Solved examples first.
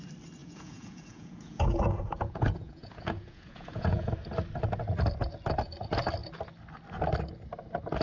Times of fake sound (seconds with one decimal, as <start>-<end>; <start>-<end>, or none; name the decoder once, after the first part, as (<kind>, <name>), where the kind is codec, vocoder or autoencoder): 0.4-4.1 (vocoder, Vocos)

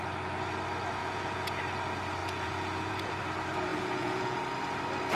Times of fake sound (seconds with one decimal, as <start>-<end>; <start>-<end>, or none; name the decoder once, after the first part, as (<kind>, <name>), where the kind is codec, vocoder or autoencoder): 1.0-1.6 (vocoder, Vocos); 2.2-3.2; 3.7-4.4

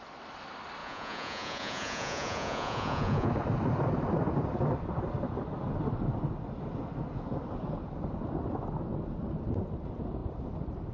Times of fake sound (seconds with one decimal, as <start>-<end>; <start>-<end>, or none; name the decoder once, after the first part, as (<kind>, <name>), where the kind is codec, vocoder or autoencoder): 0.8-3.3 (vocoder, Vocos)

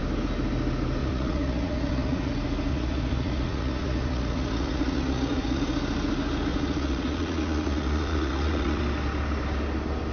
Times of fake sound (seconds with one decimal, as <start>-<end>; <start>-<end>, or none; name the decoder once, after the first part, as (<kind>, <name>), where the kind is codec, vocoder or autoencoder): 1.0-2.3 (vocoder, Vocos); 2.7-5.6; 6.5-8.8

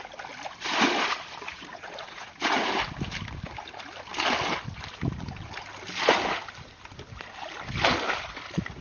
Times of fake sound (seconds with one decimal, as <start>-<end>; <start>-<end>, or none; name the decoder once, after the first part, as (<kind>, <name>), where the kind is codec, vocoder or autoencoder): 1.5-2.7 (vocoder, Vocos)